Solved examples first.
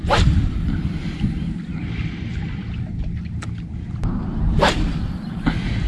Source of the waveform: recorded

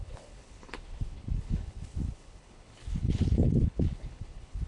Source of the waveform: remade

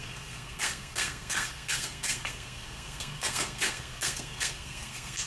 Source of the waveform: remade